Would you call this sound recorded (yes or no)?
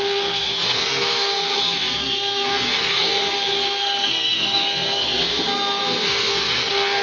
no